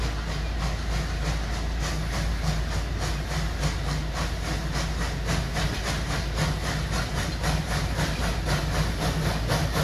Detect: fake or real real